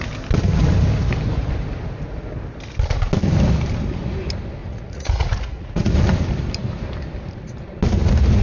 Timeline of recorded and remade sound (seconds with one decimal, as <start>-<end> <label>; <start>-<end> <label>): 0.0-4.6 recorded; 4.6-5.9 remade; 5.9-8.4 recorded